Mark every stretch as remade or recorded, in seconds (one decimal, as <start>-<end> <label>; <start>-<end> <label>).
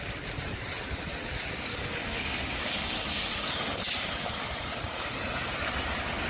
0.0-1.7 recorded; 1.7-5.0 remade; 5.0-6.3 recorded